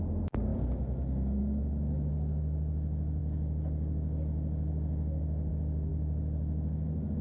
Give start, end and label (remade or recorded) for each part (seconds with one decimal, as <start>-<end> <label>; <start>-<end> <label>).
0.0-7.2 recorded